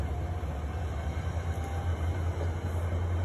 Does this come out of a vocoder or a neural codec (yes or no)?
no